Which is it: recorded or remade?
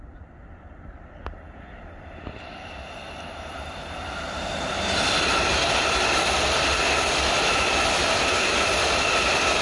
remade